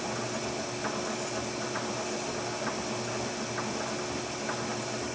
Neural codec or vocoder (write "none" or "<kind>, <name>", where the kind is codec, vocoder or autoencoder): none